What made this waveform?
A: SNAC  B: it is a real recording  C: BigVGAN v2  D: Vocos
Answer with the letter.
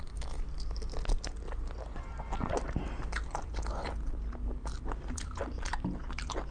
B